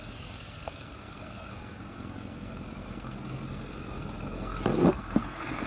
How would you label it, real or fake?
fake